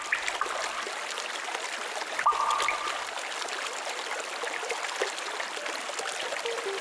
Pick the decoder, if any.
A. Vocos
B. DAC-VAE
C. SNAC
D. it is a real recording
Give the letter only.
D